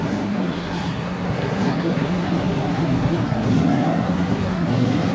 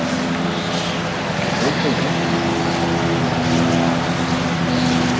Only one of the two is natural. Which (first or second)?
second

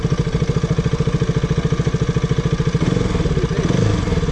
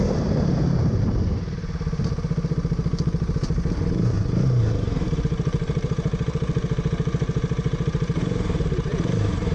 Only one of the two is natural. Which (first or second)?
first